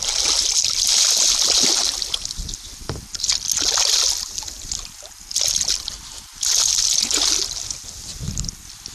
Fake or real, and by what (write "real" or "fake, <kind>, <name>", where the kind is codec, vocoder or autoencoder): real